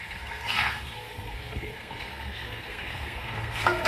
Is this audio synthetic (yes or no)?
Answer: yes